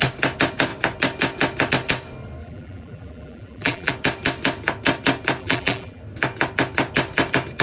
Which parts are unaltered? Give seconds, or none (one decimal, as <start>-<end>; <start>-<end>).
0.0-2.4; 3.9-5.4; 6.0-7.6

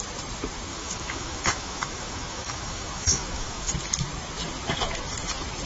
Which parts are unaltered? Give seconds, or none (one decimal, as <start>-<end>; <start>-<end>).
0.0-0.7; 3.7-5.7

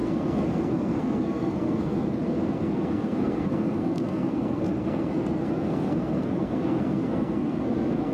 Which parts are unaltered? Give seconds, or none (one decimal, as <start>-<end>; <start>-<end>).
none

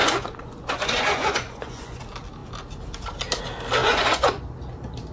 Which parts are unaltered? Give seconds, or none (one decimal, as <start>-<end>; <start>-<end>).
2.0-3.8; 4.4-5.1

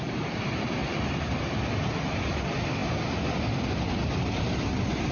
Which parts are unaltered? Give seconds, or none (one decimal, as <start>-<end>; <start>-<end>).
0.0-5.1

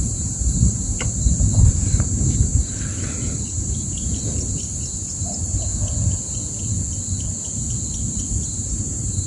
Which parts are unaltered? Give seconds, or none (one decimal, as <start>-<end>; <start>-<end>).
5.7-8.4

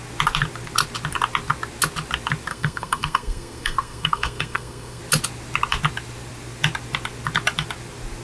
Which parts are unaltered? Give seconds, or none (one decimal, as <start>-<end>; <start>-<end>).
0.0-2.5; 5.0-8.2

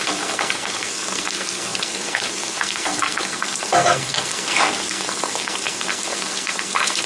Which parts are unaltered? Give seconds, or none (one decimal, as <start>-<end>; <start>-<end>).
none